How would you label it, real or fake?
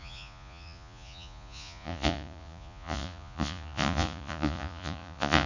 fake